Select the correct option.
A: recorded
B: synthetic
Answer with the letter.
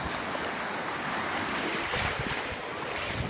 A